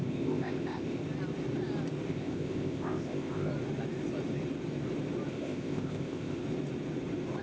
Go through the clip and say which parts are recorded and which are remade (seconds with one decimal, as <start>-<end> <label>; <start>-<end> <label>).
0.0-1.0 remade; 1.0-2.1 recorded; 2.1-3.5 remade; 3.5-5.3 recorded; 5.3-6.4 remade; 6.4-7.4 recorded